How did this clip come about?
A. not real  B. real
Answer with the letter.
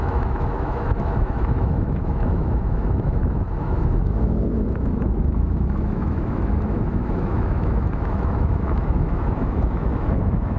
A